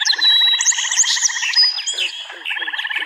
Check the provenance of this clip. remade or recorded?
recorded